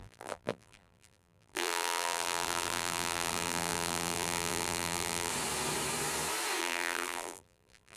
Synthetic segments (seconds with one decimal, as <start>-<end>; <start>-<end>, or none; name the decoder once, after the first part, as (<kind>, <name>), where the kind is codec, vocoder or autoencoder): 0.0-5.3 (vocoder, BigVGAN v2); 6.6-8.0